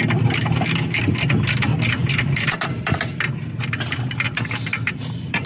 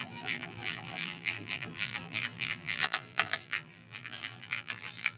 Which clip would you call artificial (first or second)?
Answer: second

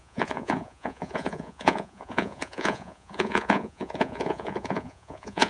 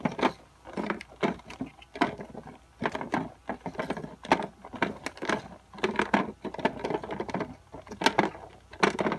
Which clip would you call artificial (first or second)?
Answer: first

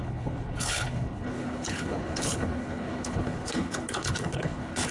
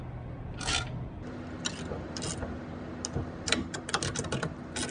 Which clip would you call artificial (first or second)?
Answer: first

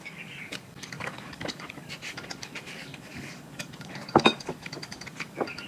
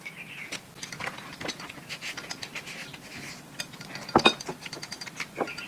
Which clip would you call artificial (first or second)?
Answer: first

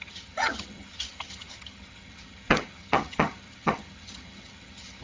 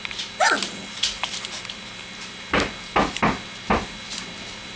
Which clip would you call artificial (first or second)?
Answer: first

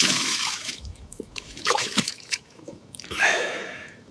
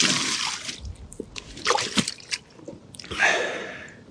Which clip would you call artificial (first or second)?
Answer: first